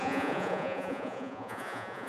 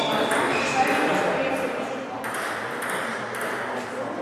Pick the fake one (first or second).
first